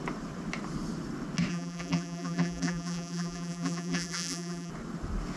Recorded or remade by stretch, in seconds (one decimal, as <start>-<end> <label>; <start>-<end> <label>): 0.0-1.5 recorded; 1.5-4.7 remade; 4.7-5.4 recorded